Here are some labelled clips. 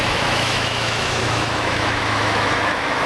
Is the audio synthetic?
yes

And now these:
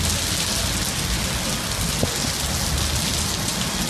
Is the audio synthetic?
no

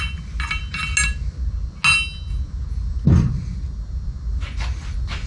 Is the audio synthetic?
no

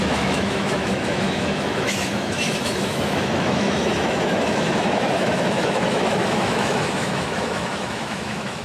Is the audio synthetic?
yes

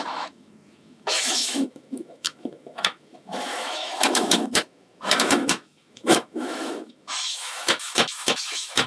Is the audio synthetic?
yes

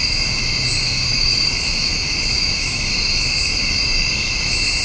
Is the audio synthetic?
yes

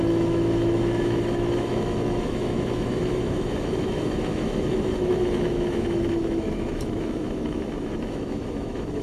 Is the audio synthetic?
yes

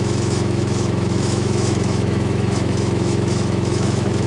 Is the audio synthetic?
yes